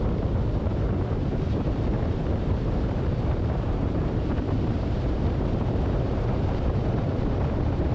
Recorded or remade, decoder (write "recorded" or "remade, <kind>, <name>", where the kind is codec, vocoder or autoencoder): remade, vocoder, BigVGAN v2